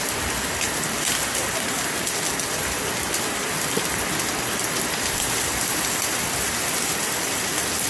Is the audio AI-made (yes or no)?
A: no